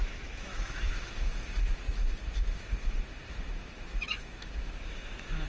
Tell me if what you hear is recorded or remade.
remade